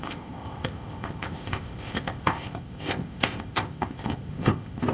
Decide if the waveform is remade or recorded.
remade